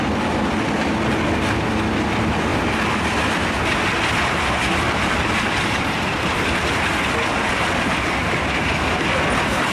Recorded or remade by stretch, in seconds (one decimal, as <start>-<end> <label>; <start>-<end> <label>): 0.0-9.7 recorded